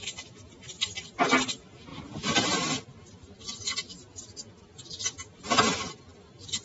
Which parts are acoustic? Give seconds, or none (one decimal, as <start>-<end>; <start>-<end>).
0.0-1.9; 2.7-6.6